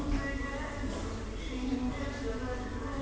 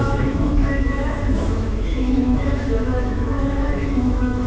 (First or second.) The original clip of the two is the first